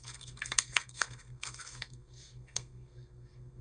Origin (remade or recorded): remade